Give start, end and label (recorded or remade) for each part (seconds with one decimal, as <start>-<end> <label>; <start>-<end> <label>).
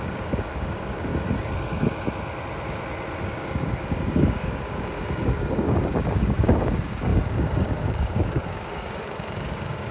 0.0-1.1 remade; 1.1-3.2 recorded; 3.2-9.9 remade